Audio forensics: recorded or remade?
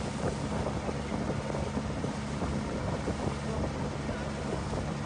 recorded